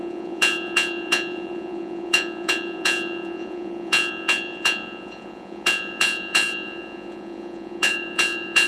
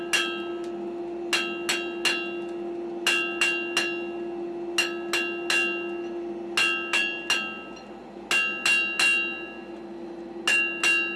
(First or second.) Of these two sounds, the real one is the second